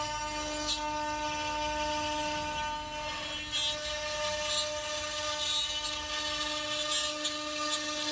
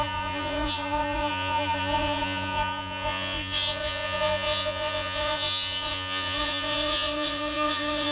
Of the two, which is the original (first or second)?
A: first